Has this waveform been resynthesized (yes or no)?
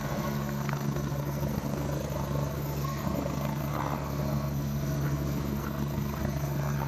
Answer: yes